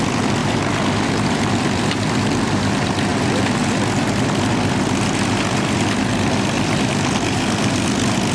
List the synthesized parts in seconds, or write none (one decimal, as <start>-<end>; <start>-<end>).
0.0-0.4; 1.1-3.1; 6.1-8.3